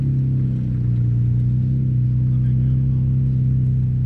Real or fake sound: real